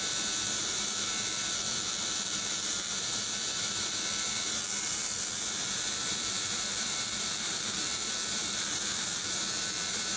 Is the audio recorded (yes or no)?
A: no